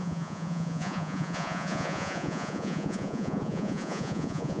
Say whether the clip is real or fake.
fake